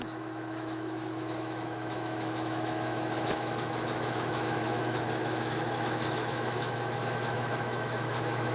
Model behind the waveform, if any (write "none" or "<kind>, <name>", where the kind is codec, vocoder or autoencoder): autoencoder, DAC-VAE